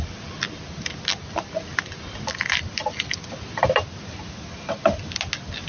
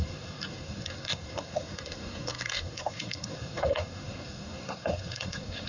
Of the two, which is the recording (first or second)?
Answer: first